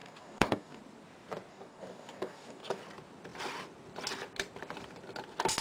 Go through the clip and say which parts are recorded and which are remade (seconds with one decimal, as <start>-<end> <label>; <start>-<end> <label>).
0.0-0.8 remade; 0.8-1.5 recorded; 1.5-2.8 remade; 2.8-5.6 recorded